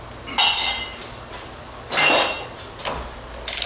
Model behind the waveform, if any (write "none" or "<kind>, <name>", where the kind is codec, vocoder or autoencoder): none